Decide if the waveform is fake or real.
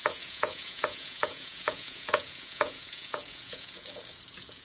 fake